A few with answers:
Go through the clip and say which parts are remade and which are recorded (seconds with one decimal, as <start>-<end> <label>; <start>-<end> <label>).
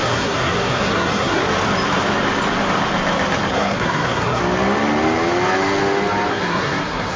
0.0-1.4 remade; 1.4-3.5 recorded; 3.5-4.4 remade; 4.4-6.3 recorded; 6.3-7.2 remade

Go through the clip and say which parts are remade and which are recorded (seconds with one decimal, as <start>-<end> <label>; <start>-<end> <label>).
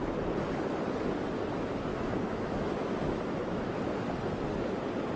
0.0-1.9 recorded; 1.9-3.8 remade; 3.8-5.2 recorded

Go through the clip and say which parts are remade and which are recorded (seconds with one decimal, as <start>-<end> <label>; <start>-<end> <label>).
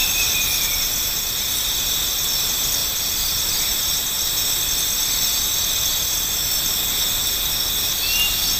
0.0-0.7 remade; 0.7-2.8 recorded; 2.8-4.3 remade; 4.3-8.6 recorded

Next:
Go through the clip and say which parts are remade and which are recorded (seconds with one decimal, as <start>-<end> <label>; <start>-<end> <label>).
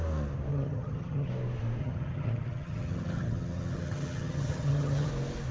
0.0-0.5 recorded; 0.5-1.3 remade; 1.3-1.8 recorded; 1.8-5.1 remade; 5.1-5.5 recorded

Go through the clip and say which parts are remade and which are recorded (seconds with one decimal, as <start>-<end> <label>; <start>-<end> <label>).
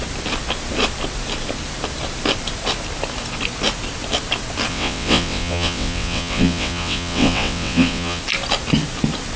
0.0-4.7 recorded; 4.7-8.2 remade; 8.2-9.4 recorded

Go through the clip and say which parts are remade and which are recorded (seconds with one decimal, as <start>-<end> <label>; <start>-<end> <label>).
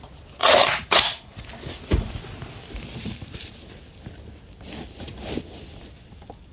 0.0-0.4 recorded; 0.4-1.3 remade; 1.3-1.8 recorded; 1.8-2.3 remade; 2.3-6.5 recorded